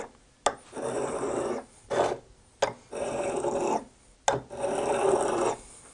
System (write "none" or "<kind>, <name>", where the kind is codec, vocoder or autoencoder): none